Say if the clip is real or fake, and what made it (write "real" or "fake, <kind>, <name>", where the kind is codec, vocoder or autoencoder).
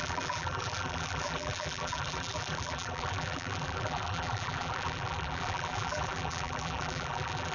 fake, vocoder, BigVGAN v2